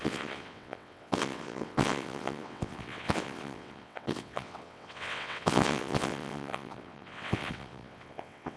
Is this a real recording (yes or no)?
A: no